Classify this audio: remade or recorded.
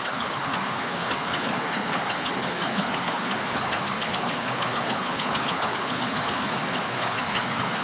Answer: remade